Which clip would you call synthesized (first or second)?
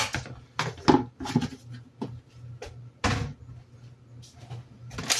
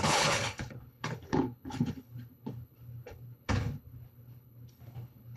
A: second